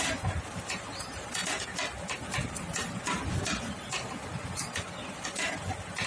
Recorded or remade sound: recorded